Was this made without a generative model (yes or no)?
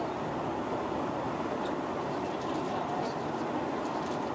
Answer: yes